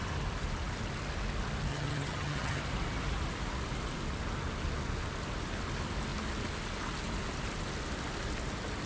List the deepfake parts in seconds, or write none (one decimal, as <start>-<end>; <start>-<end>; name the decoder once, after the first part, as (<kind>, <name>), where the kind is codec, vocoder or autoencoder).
1.7-2.6 (vocoder, HiFi-GAN)